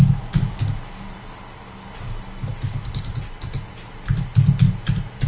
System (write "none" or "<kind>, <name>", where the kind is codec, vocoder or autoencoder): none